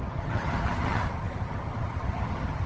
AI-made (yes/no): yes